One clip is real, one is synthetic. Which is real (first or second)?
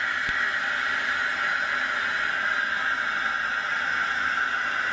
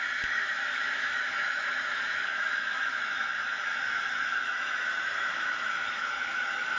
first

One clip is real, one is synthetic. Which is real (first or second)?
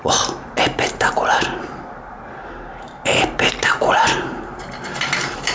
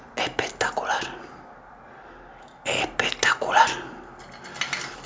second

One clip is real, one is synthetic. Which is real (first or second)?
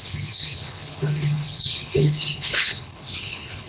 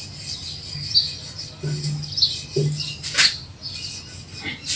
second